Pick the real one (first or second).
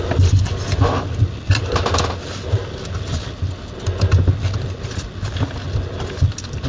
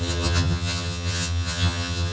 first